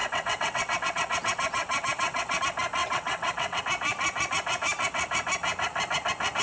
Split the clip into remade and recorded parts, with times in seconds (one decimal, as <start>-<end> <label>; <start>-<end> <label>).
0.0-2.4 remade; 2.4-2.8 recorded; 2.8-3.6 remade; 3.6-6.4 recorded